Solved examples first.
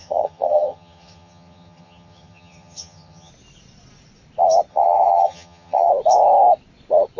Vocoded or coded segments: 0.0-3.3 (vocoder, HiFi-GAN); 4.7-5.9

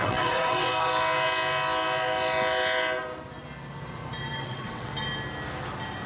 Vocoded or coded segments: 0.0-0.7 (vocoder, WaveNeXt); 4.4-4.9

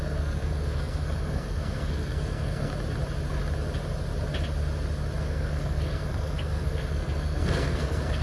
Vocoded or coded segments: 0.0-2.7 (codec, SNAC); 5.2-8.2

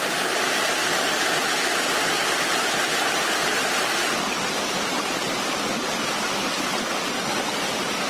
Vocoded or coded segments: 0.8-1.4 (vocoder, BigVGAN v2); 2.2-7.1

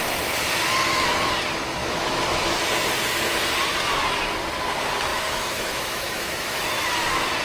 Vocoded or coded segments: 1.8-2.4 (autoencoder, DAC-VAE); 5.1-6.6

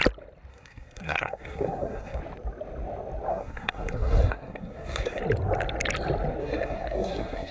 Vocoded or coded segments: 0.5-2.2 (codec, SNAC); 3.3-5.2; 6.4-7.5

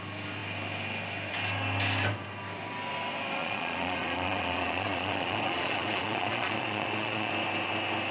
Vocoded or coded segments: 3.4-7.3 (vocoder, Vocos)